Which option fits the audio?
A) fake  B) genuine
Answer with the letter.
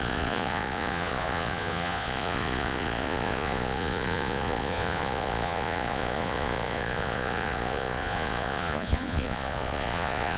A